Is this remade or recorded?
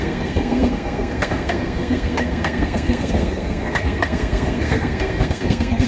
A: remade